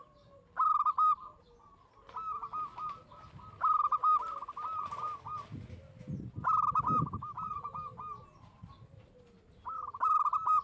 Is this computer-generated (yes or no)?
no